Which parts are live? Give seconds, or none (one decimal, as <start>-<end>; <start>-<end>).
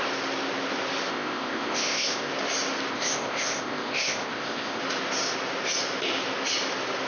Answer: 0.0-1.1; 2.3-2.9; 4.8-7.1